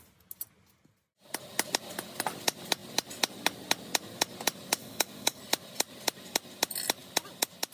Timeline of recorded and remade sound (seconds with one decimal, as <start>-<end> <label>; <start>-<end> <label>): 0.0-4.8 recorded; 4.8-5.4 remade; 5.4-7.7 recorded